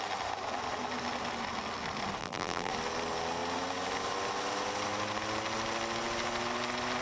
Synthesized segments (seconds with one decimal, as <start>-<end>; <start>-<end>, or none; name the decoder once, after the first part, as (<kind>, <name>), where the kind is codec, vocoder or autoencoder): 2.2-2.7 (vocoder, BigVGAN v2)